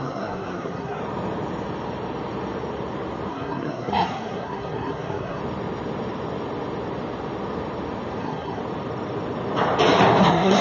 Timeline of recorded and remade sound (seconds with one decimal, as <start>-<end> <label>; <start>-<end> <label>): 0.0-1.0 remade; 1.0-3.3 recorded; 3.3-5.4 remade; 5.4-8.2 recorded; 8.2-8.6 remade; 8.6-10.2 recorded; 10.2-10.6 remade